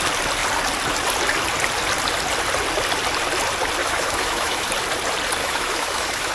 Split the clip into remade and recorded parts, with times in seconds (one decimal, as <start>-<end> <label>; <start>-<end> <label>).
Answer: 0.0-3.8 recorded; 3.8-4.7 remade; 4.7-5.4 recorded; 5.4-6.3 remade